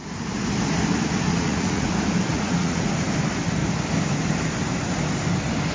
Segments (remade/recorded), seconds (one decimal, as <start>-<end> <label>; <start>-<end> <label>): 0.0-1.3 recorded; 1.3-1.9 remade; 1.9-2.3 recorded; 2.3-2.8 remade; 2.8-5.7 recorded